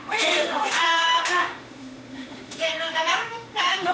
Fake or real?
fake